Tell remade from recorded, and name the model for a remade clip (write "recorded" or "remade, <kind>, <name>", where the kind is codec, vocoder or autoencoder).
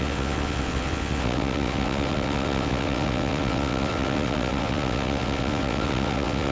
remade, vocoder, WaveNeXt